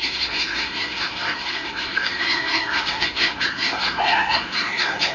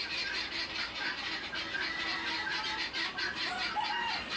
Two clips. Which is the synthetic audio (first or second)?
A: first